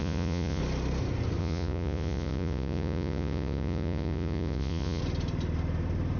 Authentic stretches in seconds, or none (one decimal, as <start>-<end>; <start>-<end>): 0.6-1.4; 5.0-6.2